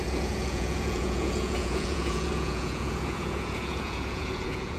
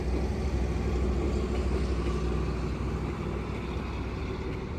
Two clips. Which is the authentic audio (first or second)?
second